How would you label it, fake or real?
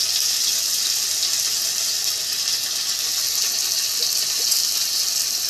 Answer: real